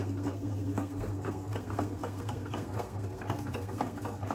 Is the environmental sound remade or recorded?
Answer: remade